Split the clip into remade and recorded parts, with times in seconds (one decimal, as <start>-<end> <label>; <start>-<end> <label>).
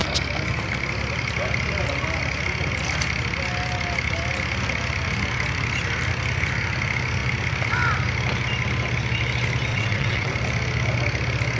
0.0-9.7 recorded; 9.7-10.3 remade; 10.3-11.6 recorded